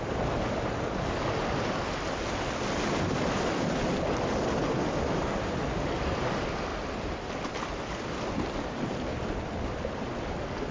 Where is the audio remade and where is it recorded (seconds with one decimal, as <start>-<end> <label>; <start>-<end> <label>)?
0.0-10.7 recorded